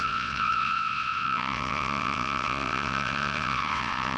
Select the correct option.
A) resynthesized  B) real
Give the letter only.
A